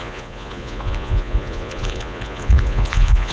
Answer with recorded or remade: remade